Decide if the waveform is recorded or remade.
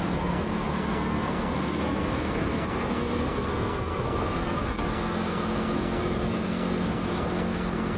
remade